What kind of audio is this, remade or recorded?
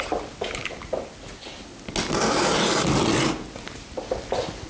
recorded